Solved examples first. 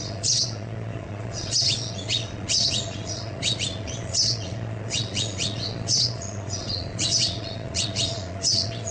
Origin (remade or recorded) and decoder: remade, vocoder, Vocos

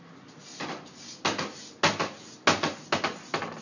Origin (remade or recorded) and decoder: recorded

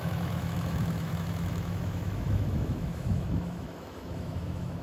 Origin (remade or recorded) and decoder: remade, autoencoder, DAC-VAE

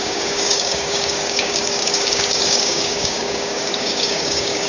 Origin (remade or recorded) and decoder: remade, codec, DAC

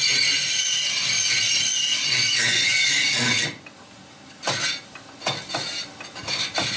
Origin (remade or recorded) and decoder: recorded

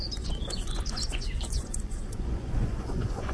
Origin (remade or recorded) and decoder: remade, vocoder, Vocos